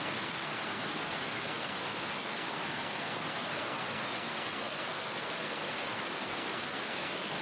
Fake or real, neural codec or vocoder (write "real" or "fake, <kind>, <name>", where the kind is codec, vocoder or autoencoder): fake, codec, SNAC